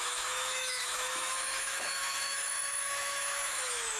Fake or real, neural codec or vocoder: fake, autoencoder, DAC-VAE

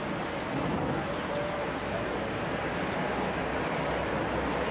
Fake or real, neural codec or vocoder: real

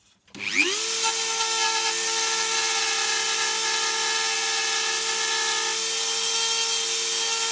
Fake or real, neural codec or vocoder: real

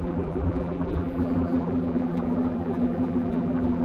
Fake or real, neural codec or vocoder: fake, vocoder, BigVGAN v2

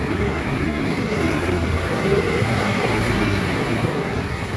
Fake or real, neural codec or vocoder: fake, codec, SNAC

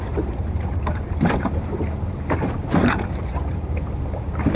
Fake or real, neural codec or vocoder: fake, vocoder, BigVGAN v2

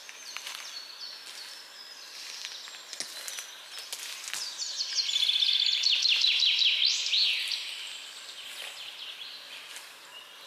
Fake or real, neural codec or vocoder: real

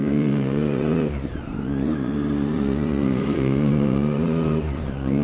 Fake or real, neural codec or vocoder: fake, vocoder, Vocos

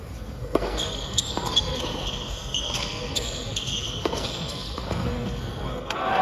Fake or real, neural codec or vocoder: fake, codec, SNAC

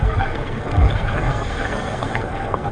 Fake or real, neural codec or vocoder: fake, codec, SNAC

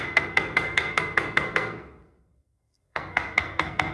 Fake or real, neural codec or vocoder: fake, codec, SNAC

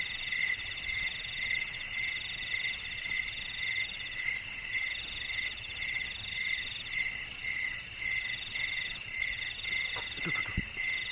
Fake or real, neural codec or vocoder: real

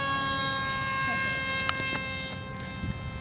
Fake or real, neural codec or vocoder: real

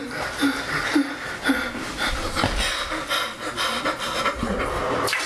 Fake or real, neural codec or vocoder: real